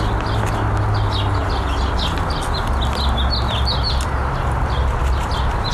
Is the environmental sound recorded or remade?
recorded